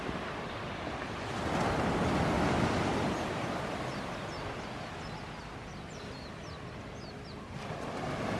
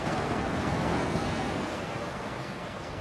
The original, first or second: first